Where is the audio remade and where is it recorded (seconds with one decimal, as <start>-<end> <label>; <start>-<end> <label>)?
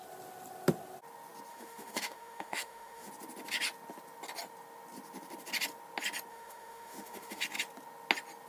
0.0-1.5 recorded; 1.5-3.1 remade; 3.1-6.3 recorded; 6.3-7.4 remade; 7.4-8.5 recorded